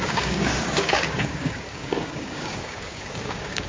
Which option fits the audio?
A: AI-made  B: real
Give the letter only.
A